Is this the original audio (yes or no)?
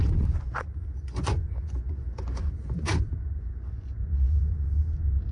no